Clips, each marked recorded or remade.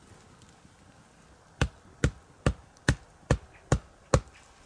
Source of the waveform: recorded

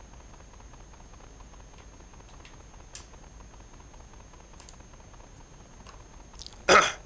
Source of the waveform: recorded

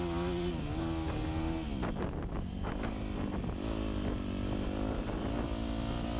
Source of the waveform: recorded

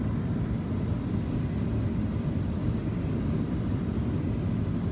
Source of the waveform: recorded